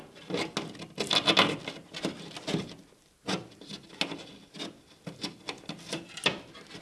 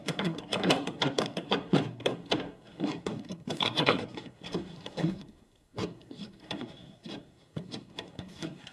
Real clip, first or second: first